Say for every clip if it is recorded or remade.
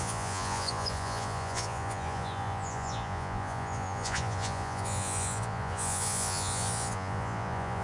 remade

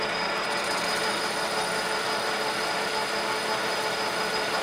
recorded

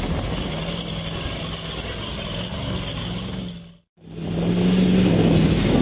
recorded